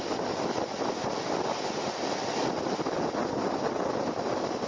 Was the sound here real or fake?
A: real